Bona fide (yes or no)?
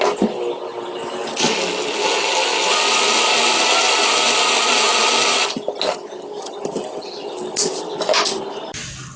yes